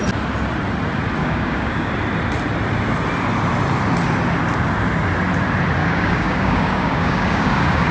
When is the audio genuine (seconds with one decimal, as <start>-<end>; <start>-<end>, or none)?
0.0-1.2; 1.9-5.8